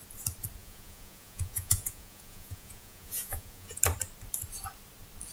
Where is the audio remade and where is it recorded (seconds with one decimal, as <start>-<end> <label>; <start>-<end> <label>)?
0.0-0.6 recorded; 0.6-3.8 remade; 3.8-5.3 recorded